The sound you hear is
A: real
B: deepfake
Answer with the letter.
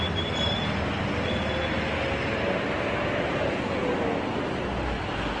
A